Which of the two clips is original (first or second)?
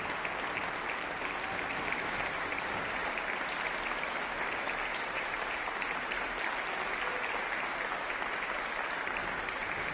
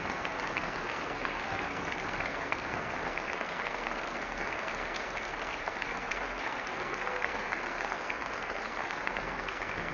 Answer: first